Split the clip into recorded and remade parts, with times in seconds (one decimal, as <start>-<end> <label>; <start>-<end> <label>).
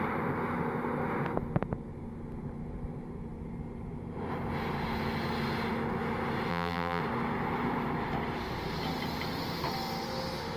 0.0-6.5 recorded; 6.5-7.0 remade; 7.0-10.6 recorded